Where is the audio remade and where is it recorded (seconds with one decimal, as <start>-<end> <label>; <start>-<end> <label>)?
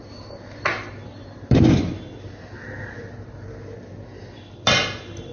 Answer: 0.0-5.3 recorded